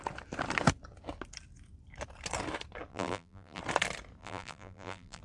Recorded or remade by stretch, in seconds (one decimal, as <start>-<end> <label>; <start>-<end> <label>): 0.0-2.9 recorded; 2.9-3.6 remade; 3.6-4.2 recorded; 4.2-5.2 remade